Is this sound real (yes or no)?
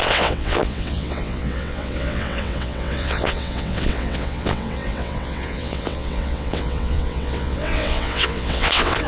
no